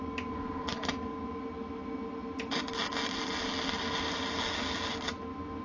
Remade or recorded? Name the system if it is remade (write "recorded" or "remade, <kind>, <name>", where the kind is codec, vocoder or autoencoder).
recorded